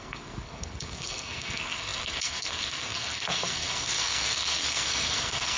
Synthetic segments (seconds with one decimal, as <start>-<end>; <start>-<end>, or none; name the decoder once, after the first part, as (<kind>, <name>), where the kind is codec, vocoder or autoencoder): 0.0-5.6 (codec, SNAC)